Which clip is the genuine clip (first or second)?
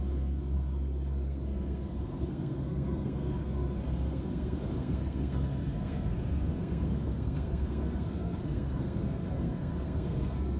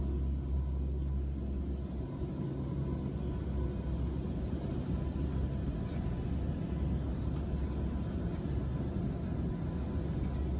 second